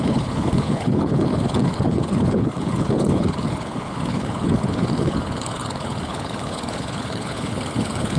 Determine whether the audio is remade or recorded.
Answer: remade